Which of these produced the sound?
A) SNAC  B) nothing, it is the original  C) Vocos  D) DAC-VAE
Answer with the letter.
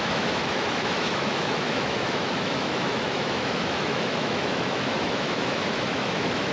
D